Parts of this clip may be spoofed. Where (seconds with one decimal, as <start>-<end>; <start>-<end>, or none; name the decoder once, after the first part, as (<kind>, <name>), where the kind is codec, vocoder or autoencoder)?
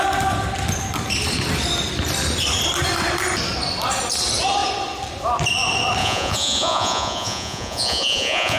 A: 6.0-8.6 (vocoder, Vocos)